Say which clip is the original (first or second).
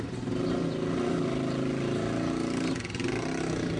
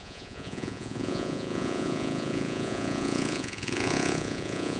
first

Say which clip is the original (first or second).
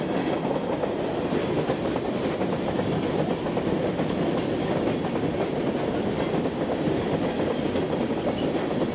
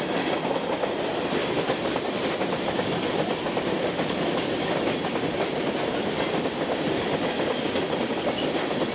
first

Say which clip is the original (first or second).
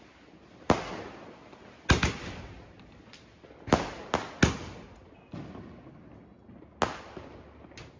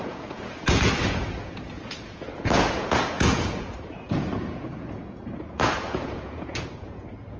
first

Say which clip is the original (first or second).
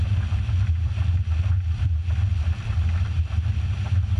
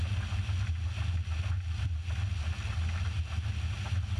second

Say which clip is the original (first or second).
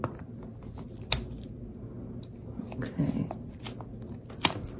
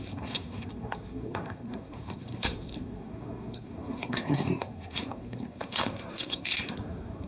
first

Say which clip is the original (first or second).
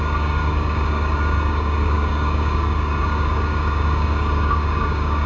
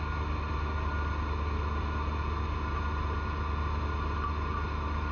second